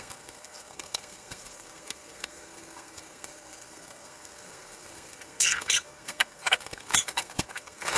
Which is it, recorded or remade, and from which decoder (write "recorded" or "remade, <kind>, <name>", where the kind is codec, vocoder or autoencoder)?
remade, codec, SNAC